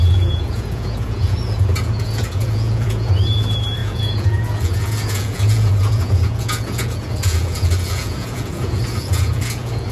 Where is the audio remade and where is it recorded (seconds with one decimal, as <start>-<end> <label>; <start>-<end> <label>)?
0.0-9.9 remade

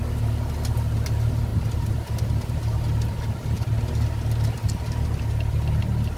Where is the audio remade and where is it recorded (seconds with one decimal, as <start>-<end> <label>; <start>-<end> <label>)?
0.0-6.2 recorded

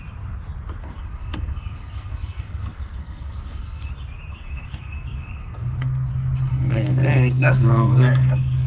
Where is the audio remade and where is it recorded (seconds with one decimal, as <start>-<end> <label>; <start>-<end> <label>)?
0.0-0.8 recorded; 0.8-3.9 remade; 3.9-4.3 recorded; 4.3-6.1 remade; 6.1-6.5 recorded; 6.5-8.7 remade

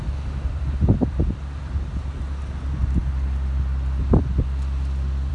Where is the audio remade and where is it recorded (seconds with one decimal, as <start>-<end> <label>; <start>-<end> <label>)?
0.0-5.3 recorded

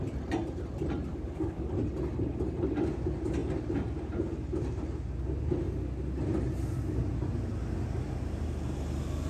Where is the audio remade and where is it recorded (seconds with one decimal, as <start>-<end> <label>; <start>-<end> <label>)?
0.0-1.1 recorded; 1.1-1.7 remade; 1.7-9.3 recorded

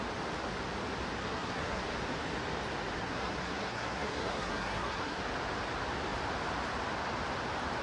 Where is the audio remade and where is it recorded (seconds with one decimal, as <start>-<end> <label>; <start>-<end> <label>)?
0.0-1.2 recorded; 1.2-1.8 remade; 1.8-3.0 recorded; 3.0-5.2 remade; 5.2-7.8 recorded

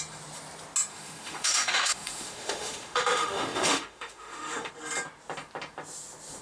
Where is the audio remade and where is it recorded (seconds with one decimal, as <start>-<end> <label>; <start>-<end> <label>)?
0.0-0.9 recorded; 0.9-4.7 remade; 4.7-6.4 recorded